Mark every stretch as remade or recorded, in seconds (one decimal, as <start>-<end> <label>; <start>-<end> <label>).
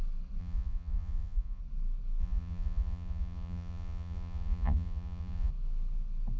0.0-0.4 recorded; 0.4-1.6 remade; 1.6-2.2 recorded; 2.2-5.5 remade; 5.5-6.4 recorded